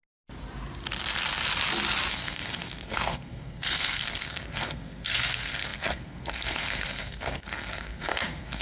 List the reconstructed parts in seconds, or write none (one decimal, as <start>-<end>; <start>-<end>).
2.1-8.6